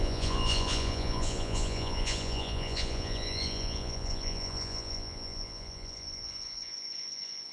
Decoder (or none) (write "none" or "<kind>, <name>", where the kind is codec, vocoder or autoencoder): vocoder, Vocos